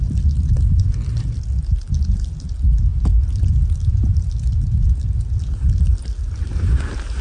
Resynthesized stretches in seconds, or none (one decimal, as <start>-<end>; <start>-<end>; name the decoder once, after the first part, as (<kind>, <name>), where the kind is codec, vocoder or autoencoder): none